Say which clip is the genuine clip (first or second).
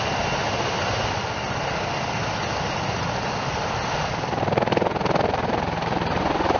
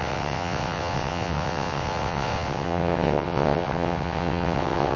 first